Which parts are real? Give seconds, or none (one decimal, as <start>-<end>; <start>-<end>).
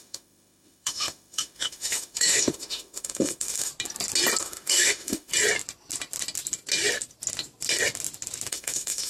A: 3.7-4.4; 5.3-8.5